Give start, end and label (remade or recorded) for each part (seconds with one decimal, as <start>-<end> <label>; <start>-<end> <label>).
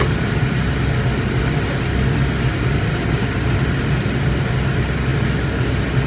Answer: 0.0-6.1 recorded